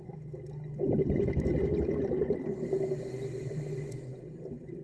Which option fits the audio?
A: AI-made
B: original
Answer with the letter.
B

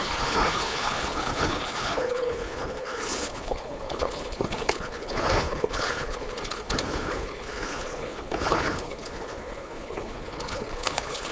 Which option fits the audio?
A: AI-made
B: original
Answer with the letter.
A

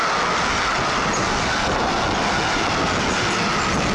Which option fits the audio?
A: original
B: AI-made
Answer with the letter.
A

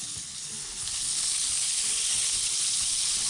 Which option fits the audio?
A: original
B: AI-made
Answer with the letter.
B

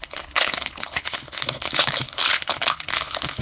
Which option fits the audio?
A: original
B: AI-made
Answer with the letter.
B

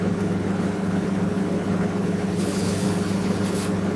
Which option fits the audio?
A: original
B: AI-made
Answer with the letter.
B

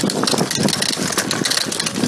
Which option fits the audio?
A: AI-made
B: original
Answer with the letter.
B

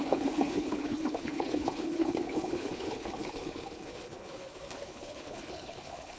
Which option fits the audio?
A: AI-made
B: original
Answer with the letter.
A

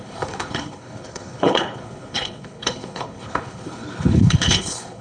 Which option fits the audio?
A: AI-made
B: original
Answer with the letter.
A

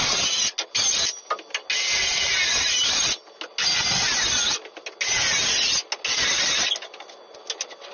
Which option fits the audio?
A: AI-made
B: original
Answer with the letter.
B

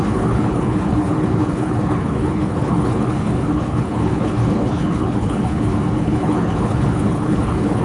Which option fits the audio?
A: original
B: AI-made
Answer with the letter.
B